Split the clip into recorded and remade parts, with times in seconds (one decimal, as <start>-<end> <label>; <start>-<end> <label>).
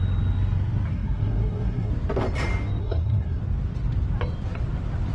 0.0-0.9 recorded; 0.9-1.9 remade; 1.9-2.8 recorded; 2.8-3.4 remade; 3.4-5.1 recorded